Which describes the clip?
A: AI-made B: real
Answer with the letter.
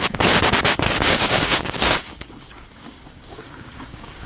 A